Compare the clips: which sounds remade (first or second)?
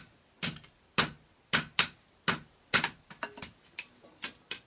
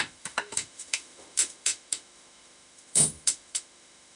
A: second